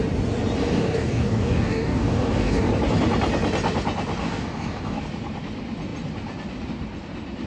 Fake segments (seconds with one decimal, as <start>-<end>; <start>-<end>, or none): 0.6-2.7; 4.2-5.0

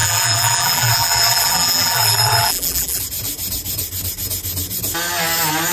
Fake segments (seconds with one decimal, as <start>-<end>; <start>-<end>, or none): 0.0-3.0

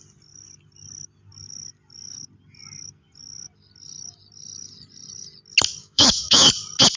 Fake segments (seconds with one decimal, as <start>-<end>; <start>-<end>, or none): 5.8-6.5

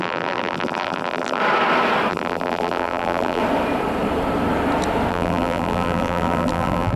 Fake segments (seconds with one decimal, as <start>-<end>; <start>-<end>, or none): 0.0-1.4; 2.1-3.4; 5.1-7.0

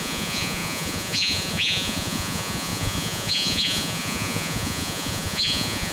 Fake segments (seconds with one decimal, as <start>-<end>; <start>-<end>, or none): 0.0-5.9